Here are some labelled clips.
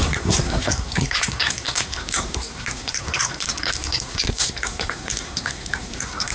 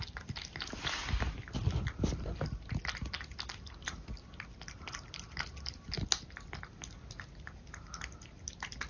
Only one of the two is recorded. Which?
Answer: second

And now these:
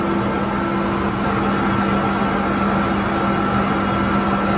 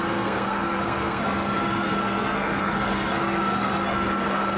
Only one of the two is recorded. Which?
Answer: first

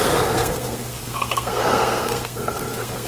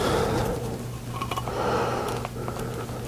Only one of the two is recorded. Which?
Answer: second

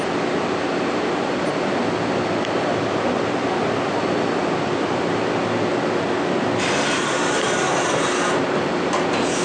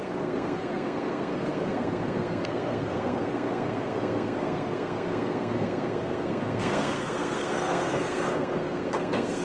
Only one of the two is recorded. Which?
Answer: first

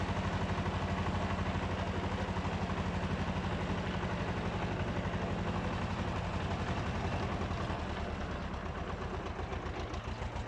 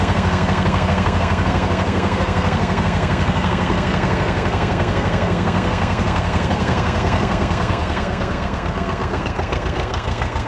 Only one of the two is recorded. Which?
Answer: first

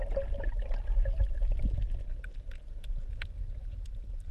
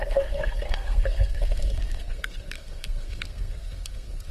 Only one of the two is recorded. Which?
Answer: first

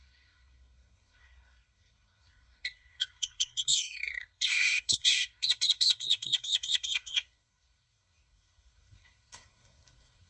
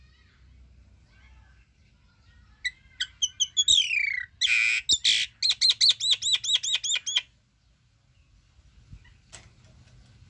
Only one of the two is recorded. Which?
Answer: second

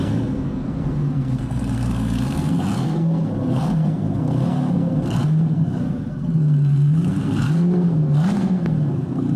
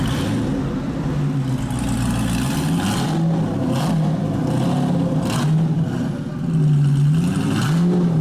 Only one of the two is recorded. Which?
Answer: second